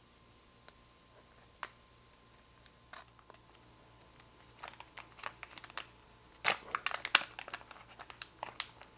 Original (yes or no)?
yes